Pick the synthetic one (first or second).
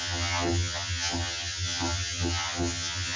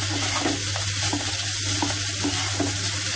first